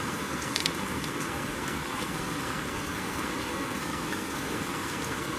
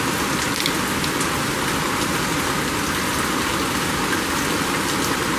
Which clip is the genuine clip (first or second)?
second